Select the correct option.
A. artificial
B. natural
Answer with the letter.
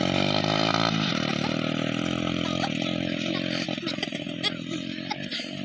B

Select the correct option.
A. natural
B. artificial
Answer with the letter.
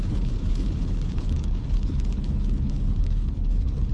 B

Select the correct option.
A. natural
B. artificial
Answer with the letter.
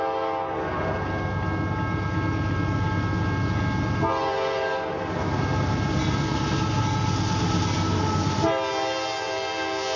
A